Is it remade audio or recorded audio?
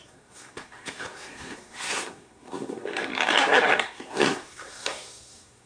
remade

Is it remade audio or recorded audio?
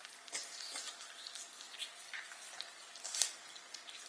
recorded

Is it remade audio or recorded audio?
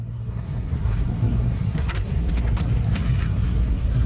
remade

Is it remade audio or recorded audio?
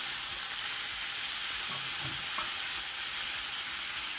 recorded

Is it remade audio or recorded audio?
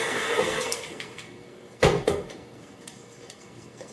remade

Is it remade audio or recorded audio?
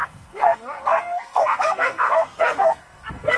remade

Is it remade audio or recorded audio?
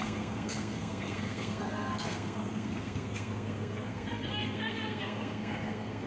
remade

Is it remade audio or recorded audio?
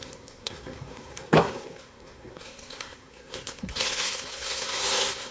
remade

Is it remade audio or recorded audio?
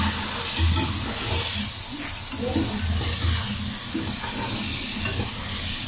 recorded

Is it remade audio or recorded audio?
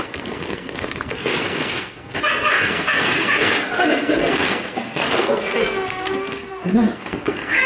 remade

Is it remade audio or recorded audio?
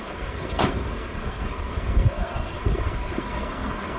remade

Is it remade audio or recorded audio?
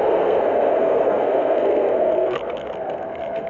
remade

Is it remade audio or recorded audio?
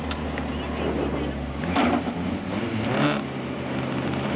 recorded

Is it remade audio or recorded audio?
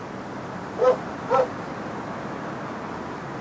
recorded